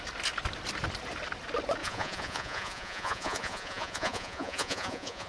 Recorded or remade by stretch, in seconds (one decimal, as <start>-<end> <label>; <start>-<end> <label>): 0.0-1.8 recorded; 1.8-5.3 remade